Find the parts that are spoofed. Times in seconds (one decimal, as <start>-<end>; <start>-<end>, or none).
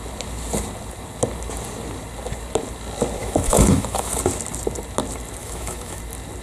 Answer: 3.2-4.1; 5.4-6.0